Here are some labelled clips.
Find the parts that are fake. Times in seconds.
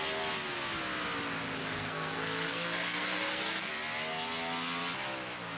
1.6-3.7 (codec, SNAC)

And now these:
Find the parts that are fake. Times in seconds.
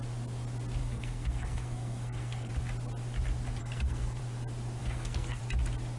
0.8-2.5 (codec, SNAC); 3.6-4.2; 4.8-5.4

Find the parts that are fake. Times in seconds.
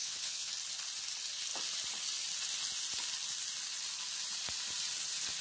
0.0-0.5 (vocoder, WaveNeXt)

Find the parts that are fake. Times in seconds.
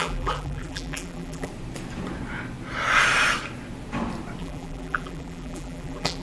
0.0-1.5 (vocoder, BigVGAN v2); 4.4-6.2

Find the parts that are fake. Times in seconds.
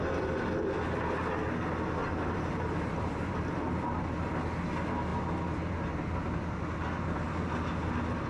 2.0-4.4 (vocoder, BigVGAN v2)